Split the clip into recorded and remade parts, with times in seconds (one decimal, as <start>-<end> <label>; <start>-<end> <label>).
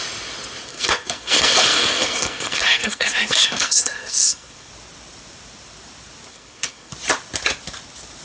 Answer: 0.0-0.7 recorded; 0.7-4.7 remade; 4.7-6.3 recorded; 6.3-6.9 remade; 6.9-8.2 recorded